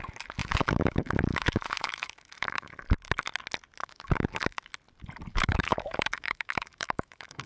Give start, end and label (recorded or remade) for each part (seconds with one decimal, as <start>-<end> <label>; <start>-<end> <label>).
0.0-0.4 recorded; 0.4-2.7 remade; 2.7-3.8 recorded; 3.8-4.7 remade; 4.7-5.3 recorded; 5.3-7.5 remade